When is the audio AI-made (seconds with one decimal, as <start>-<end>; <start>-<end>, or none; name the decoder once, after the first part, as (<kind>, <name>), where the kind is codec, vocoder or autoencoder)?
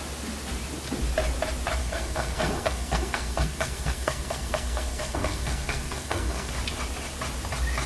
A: 1.8-6.5 (codec, SNAC)